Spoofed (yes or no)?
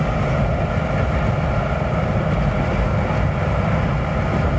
no